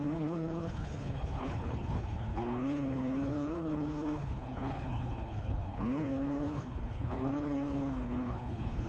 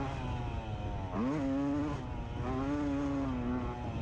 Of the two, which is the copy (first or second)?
first